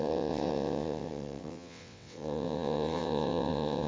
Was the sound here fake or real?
fake